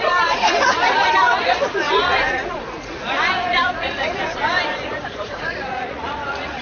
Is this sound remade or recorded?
remade